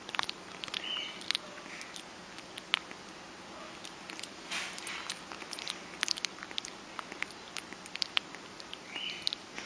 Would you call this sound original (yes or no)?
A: yes